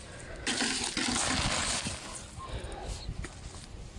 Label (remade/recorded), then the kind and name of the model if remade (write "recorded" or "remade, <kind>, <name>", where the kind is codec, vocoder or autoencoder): recorded